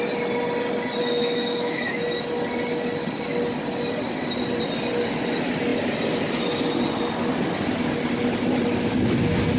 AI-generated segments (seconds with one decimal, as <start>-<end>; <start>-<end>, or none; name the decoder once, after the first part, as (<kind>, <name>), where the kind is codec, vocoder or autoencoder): 1.0-2.0 (autoencoder, DAC-VAE)